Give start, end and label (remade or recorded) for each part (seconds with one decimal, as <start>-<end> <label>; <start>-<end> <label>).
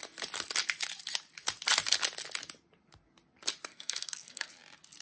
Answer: 0.0-3.7 recorded; 3.7-4.5 remade; 4.5-5.0 recorded